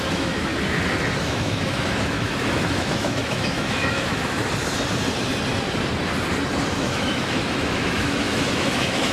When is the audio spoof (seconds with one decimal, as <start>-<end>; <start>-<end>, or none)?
0.0-0.5; 1.2-4.4; 6.7-9.1